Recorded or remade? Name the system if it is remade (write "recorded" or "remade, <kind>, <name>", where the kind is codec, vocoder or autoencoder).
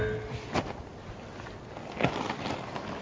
recorded